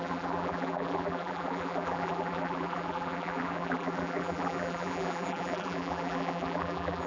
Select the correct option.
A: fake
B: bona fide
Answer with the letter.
A